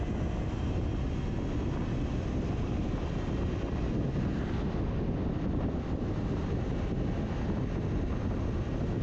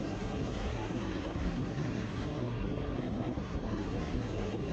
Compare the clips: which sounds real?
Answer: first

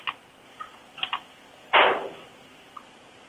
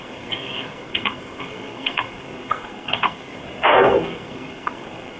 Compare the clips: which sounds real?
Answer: first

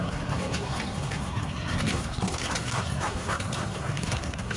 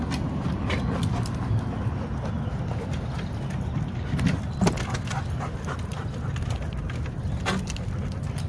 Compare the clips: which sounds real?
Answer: second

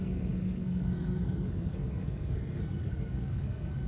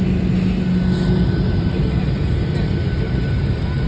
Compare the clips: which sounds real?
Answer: second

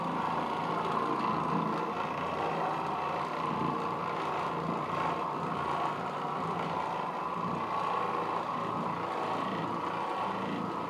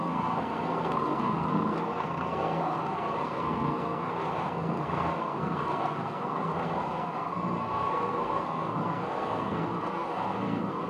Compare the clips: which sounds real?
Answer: first